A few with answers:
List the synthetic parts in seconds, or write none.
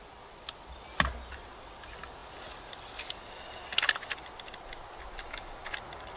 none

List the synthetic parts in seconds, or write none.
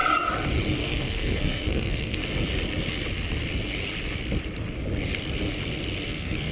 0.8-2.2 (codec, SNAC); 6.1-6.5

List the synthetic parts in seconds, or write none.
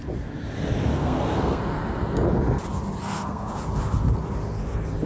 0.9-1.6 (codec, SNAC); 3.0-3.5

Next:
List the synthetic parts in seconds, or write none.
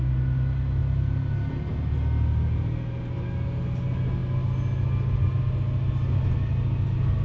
none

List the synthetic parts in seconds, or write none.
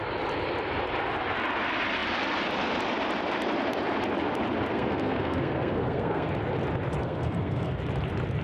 4.7-6.3 (codec, SNAC); 7.0-7.8